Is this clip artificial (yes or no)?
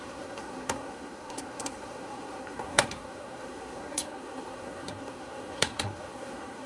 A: yes